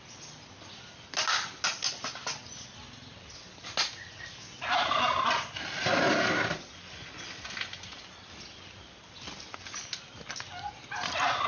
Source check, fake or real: real